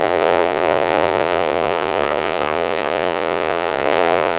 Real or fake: fake